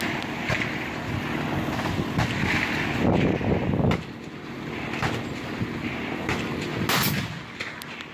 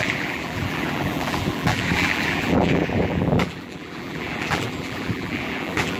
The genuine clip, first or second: first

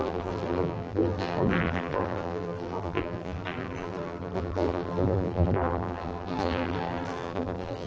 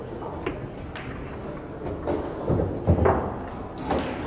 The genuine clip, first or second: second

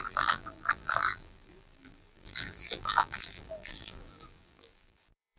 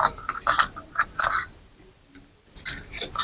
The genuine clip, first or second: second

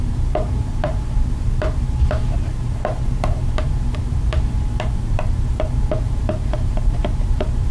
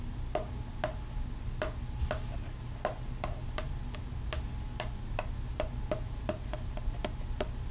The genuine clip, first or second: second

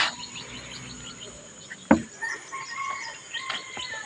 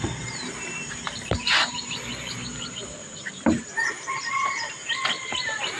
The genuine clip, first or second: first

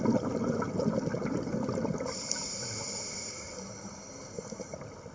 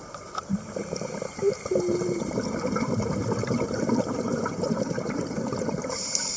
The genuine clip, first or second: first